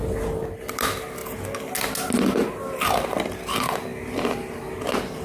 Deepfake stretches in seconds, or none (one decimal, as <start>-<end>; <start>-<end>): none